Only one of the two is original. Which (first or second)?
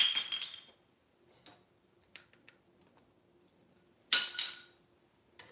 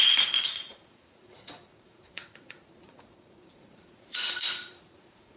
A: first